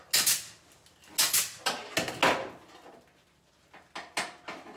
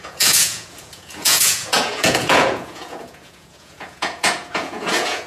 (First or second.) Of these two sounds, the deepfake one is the second